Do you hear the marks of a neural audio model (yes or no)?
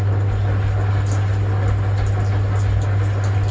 no